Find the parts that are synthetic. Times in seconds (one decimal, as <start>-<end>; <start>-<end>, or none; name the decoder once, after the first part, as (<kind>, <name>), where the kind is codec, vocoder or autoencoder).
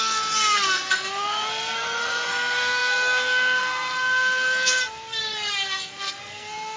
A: 0.0-6.8 (codec, SNAC)